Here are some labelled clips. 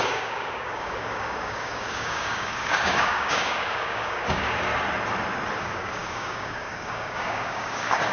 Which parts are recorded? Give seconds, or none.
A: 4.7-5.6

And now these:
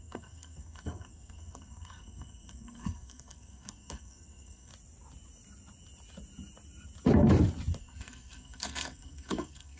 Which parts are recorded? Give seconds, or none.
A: 4.7-7.8